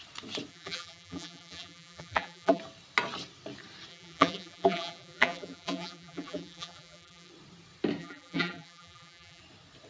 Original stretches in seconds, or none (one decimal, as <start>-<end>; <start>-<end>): 0.0-0.5; 2.6-3.9; 7.3-8.0; 9.4-9.9